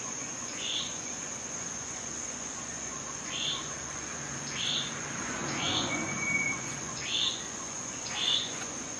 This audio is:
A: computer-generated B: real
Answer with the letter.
A